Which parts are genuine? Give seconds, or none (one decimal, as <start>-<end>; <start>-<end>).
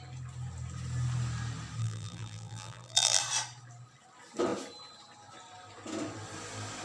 0.0-1.8; 3.2-6.8